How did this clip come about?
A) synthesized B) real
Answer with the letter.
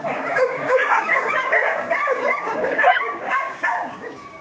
A